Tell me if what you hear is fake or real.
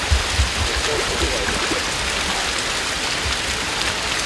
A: real